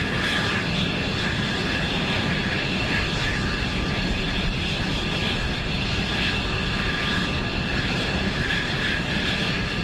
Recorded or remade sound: recorded